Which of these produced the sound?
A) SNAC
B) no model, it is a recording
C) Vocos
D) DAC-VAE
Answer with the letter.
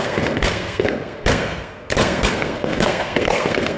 A